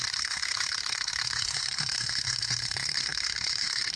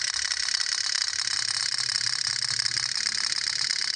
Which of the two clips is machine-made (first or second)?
first